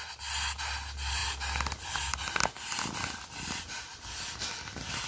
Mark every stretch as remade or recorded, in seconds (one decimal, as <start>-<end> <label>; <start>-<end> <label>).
0.0-5.1 recorded